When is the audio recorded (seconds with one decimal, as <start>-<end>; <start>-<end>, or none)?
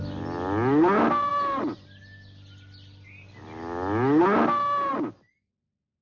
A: 0.0-6.0